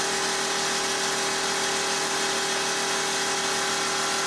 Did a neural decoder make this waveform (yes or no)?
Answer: no